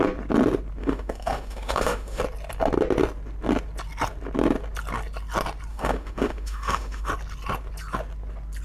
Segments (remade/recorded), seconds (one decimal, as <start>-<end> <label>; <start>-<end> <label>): 0.0-0.8 recorded; 0.8-2.2 remade; 2.2-5.7 recorded; 5.7-7.1 remade; 7.1-8.6 recorded